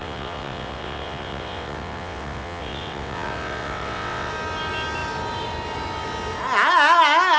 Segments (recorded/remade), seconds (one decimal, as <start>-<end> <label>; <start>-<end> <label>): 0.0-4.3 remade; 4.3-7.4 recorded

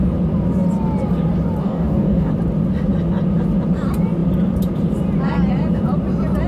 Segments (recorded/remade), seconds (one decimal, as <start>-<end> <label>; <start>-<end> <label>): 0.0-1.6 recorded; 1.6-2.3 remade; 2.3-6.5 recorded

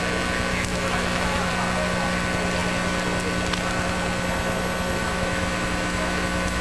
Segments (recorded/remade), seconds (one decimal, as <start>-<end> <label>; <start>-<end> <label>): 0.0-0.5 recorded; 0.5-1.5 remade; 1.5-5.0 recorded; 5.0-6.6 remade

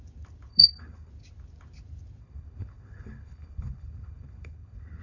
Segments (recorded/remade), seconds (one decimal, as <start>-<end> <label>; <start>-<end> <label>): 0.0-0.5 recorded; 0.5-1.1 remade; 1.1-2.2 recorded; 2.2-5.0 remade

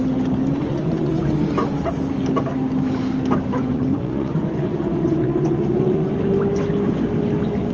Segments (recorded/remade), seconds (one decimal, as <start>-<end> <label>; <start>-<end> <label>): 0.0-0.6 recorded; 0.6-1.1 remade; 1.1-3.6 recorded; 3.6-6.1 remade; 6.1-7.7 recorded

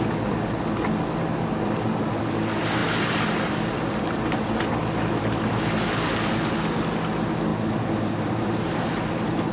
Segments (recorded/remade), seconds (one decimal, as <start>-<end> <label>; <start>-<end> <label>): 0.0-7.5 recorded; 7.5-9.5 remade

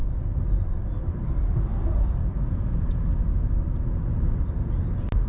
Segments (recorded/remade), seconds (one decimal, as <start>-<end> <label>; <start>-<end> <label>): 0.0-3.0 remade; 3.0-4.1 recorded; 4.1-4.8 remade; 4.8-5.3 recorded